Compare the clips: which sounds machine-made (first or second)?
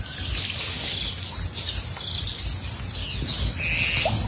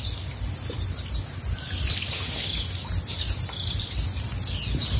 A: second